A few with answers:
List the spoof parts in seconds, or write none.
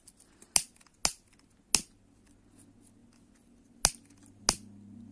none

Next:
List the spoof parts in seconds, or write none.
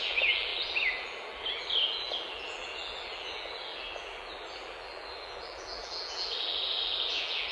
0.0-7.5 (vocoder, BigVGAN v2)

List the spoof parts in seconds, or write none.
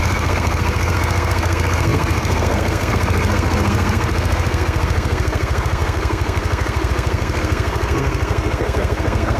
0.0-9.4 (codec, SNAC)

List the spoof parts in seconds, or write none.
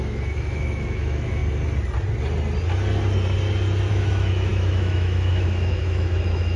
0.0-1.4 (autoencoder, DAC-VAE); 3.9-6.6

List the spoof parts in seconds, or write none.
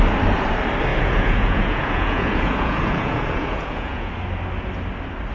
0.9-4.1 (vocoder, Vocos)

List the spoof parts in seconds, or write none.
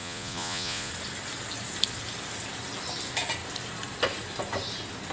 0.0-0.9 (vocoder, Vocos)